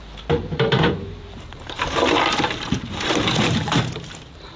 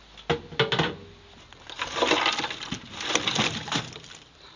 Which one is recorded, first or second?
second